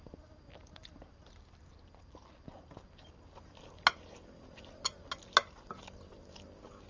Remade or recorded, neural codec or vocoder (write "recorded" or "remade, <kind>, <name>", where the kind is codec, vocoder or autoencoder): recorded